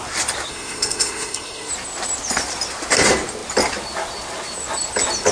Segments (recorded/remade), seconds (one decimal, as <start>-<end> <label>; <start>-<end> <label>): 0.0-0.5 recorded; 0.5-1.7 remade; 1.7-5.3 recorded

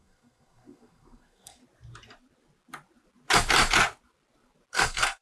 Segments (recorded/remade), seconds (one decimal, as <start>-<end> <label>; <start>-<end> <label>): 0.0-1.6 remade; 1.6-4.7 recorded; 4.7-5.2 remade

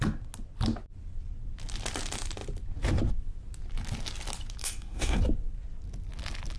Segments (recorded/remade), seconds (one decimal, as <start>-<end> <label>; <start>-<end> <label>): 0.0-4.6 recorded; 4.6-5.2 remade; 5.2-6.6 recorded

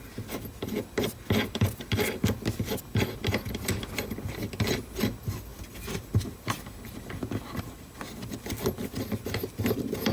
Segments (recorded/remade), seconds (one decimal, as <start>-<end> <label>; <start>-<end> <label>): 0.0-10.1 recorded

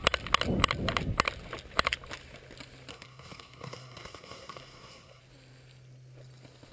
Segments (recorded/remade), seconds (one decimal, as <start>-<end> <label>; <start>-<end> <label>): 0.0-2.9 recorded; 2.9-5.2 remade; 5.2-6.7 recorded

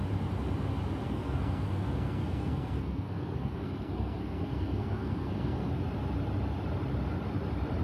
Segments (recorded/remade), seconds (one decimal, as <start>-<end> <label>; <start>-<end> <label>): 0.0-1.0 recorded; 1.0-5.7 remade; 5.7-7.8 recorded

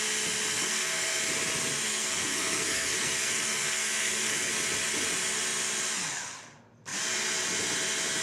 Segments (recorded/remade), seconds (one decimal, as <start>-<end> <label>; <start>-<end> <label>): 0.0-0.5 recorded; 0.5-1.2 remade; 1.2-1.9 recorded; 1.9-4.5 remade; 4.5-8.2 recorded